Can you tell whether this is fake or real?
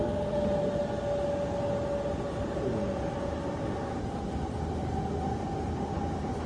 real